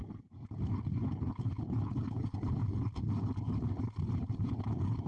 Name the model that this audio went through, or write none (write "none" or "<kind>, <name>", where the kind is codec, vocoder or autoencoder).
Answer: none